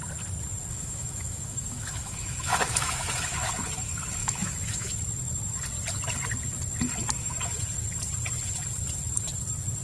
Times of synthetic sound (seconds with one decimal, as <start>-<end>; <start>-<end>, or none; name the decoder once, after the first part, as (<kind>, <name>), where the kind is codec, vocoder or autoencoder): 0.7-3.5 (autoencoder, DAC-VAE); 4.2-4.9